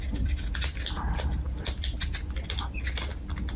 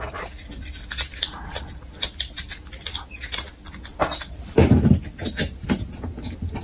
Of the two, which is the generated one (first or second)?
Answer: second